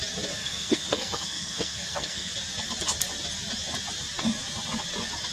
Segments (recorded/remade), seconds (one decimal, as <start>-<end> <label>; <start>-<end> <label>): 0.0-0.4 recorded; 0.4-2.3 remade; 2.3-5.3 recorded